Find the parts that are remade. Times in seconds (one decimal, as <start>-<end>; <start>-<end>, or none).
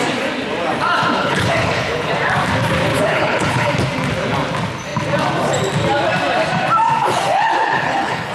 1.2-2.1; 2.9-3.7; 7.0-8.3